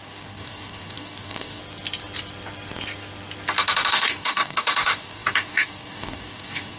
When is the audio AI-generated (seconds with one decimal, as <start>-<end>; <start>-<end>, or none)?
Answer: 0.0-1.6; 3.9-6.8